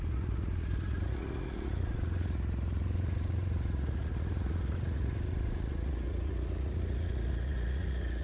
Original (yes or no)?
no